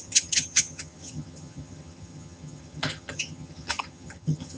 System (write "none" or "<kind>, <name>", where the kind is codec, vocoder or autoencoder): vocoder, HiFi-GAN